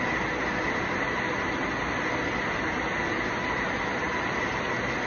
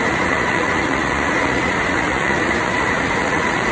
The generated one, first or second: second